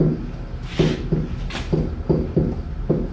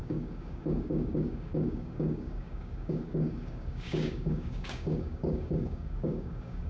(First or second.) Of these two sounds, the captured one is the first